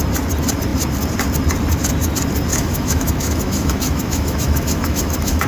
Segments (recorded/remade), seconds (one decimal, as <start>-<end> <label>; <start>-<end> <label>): 0.0-2.5 recorded; 2.5-5.5 remade